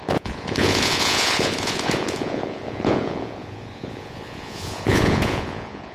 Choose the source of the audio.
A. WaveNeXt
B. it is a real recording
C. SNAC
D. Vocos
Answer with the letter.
D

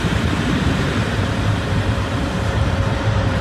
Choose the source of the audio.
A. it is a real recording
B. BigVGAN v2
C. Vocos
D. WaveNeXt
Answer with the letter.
B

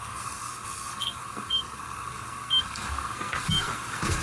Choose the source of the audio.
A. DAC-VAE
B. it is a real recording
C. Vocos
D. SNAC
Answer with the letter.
D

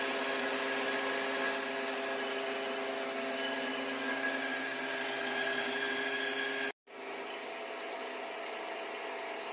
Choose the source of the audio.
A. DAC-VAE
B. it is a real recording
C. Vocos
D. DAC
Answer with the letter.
B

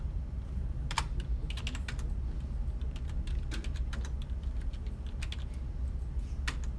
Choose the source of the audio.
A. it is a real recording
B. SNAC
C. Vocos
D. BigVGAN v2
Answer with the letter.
A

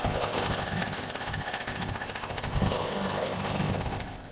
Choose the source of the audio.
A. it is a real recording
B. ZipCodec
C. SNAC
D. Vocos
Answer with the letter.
B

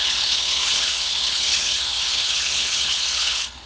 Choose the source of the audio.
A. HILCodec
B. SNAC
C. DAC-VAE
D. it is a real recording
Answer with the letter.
A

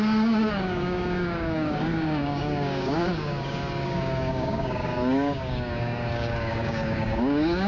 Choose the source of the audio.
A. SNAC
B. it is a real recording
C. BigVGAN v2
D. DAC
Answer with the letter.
D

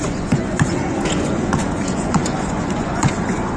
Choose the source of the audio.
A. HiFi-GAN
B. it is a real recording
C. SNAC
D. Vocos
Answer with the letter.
D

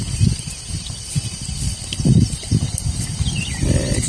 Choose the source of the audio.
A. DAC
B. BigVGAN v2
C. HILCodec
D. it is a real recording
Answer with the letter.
D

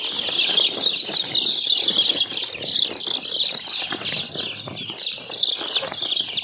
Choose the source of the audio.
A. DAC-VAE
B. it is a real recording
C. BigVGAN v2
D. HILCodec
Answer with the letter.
B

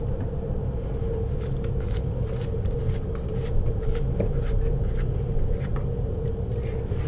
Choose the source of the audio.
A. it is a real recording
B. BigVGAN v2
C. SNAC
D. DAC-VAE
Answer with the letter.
B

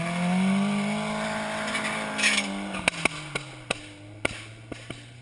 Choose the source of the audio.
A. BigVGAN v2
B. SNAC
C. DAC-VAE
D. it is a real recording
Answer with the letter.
D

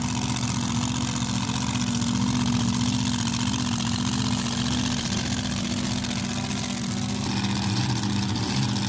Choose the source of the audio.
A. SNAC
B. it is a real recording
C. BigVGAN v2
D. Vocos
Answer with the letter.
B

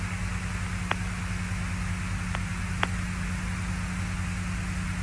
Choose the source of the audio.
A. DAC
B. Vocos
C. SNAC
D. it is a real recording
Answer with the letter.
D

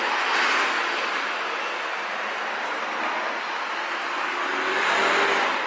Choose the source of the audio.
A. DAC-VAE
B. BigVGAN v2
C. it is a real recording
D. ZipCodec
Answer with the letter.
C